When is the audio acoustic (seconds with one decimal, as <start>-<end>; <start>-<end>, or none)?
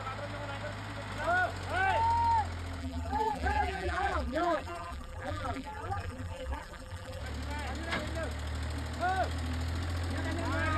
0.0-2.8; 7.2-10.8